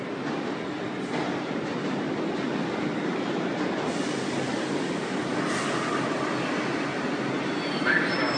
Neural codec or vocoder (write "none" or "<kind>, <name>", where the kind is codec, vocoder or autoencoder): none